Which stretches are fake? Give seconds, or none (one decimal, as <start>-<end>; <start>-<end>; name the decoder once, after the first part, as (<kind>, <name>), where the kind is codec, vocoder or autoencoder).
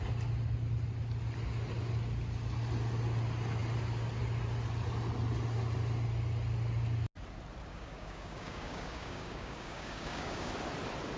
7.7-10.5 (codec, DAC)